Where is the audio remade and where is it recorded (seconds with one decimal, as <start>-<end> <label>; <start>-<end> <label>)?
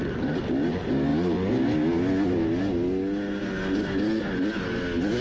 0.0-5.2 recorded